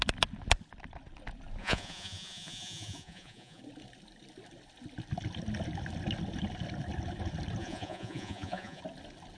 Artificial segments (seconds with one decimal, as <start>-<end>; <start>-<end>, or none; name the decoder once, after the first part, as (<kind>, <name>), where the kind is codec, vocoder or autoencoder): 1.6-3.6 (vocoder, Vocos); 7.6-8.8